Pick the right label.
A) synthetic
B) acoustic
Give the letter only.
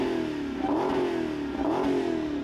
B